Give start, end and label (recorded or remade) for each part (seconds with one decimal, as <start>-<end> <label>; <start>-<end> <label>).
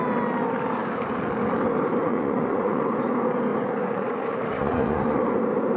0.0-2.0 recorded; 2.0-2.8 remade; 2.8-3.5 recorded; 3.5-5.2 remade; 5.2-5.8 recorded